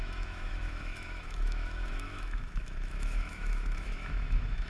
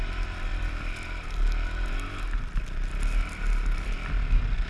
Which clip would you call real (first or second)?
second